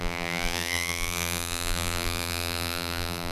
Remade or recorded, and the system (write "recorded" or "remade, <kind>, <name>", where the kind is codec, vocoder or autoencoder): remade, vocoder, BigVGAN v2